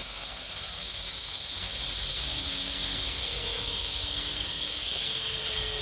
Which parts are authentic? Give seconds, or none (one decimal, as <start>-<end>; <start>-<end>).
1.7-2.1